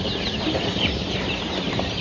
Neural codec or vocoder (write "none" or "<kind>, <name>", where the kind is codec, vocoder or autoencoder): none